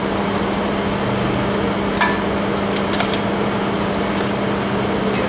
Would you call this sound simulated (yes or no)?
no